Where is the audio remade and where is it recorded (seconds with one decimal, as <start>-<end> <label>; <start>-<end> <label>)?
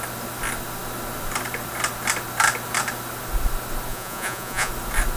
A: 0.0-3.9 recorded; 3.9-4.7 remade; 4.7-5.2 recorded